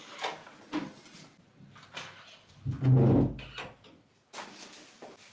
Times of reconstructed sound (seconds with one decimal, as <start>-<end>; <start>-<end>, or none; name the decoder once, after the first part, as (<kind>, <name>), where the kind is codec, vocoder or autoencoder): none